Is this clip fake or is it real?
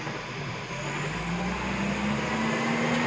real